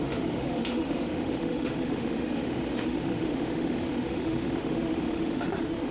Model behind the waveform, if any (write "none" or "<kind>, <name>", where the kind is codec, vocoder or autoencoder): autoencoder, DAC-VAE